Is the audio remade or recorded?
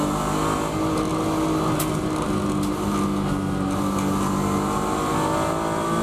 recorded